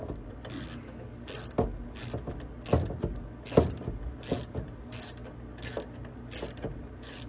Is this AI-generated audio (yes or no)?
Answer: no